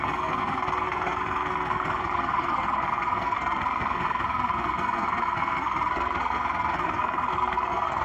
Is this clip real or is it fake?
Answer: fake